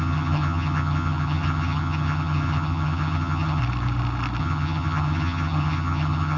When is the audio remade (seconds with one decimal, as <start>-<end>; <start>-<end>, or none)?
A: 0.0-3.6; 4.4-6.4